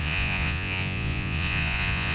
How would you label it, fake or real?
fake